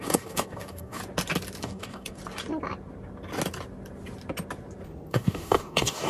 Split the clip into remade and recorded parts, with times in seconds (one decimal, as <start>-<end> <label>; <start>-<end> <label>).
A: 0.0-1.0 remade; 1.0-1.6 recorded; 1.6-2.2 remade; 2.2-5.1 recorded; 5.1-6.1 remade